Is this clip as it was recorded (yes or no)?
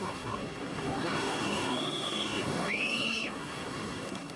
no